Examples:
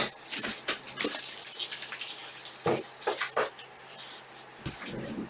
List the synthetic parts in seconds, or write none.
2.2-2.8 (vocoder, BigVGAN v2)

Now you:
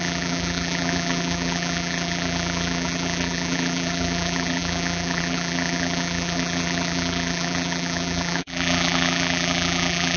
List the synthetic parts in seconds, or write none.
0.0-10.2 (vocoder, BigVGAN v2)